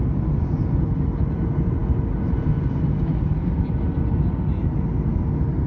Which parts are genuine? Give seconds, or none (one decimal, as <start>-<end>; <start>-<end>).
0.0-5.7